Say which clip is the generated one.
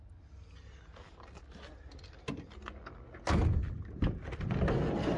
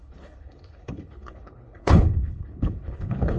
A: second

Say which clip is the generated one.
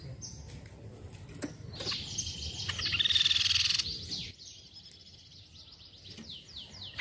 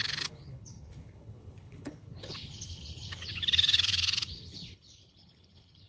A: second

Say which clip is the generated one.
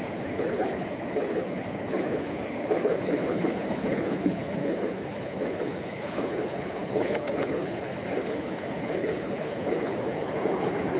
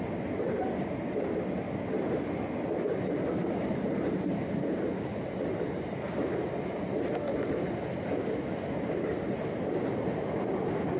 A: first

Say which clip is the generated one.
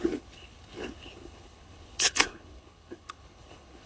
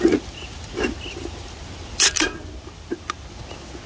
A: first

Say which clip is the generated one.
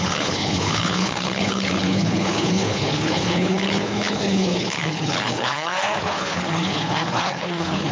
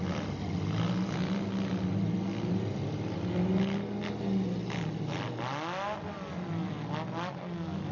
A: first